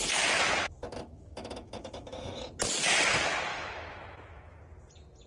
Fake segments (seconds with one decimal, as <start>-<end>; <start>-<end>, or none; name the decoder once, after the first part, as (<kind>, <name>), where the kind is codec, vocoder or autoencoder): 0.8-2.5 (autoencoder, DAC-VAE); 3.5-4.6